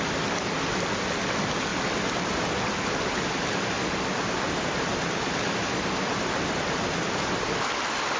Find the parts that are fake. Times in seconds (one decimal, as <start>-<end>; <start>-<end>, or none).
none